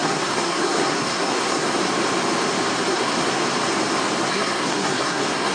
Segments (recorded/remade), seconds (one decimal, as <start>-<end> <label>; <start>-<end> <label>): 0.0-1.8 remade; 1.8-2.9 recorded; 2.9-3.4 remade; 3.4-4.3 recorded; 4.3-5.5 remade